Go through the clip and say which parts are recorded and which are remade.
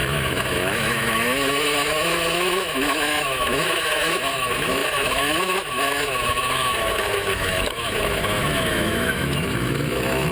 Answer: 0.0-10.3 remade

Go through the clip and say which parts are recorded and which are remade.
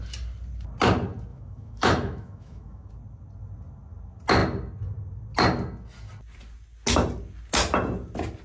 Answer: 0.0-1.3 recorded; 1.3-2.9 remade; 2.9-8.4 recorded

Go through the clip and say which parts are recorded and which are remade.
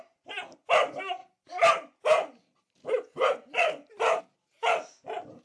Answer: 0.0-1.2 recorded; 1.2-4.2 remade; 4.2-5.4 recorded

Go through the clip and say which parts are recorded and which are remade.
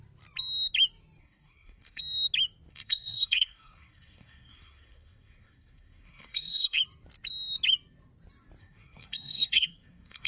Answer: 0.0-1.2 recorded; 1.2-2.0 remade; 2.0-2.7 recorded; 2.7-6.8 remade; 6.8-8.6 recorded; 8.6-10.3 remade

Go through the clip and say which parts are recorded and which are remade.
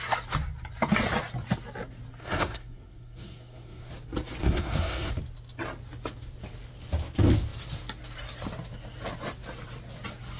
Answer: 0.0-2.2 recorded; 2.2-3.9 remade; 3.9-4.4 recorded; 4.4-5.1 remade; 5.1-10.4 recorded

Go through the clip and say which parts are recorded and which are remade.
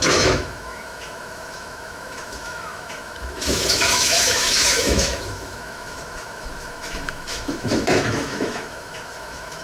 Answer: 0.0-9.6 remade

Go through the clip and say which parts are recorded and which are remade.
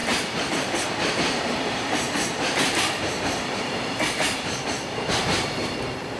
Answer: 0.0-6.2 remade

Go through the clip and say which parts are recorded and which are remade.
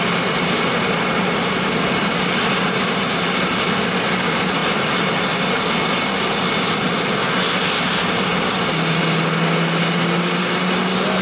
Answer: 0.0-11.2 recorded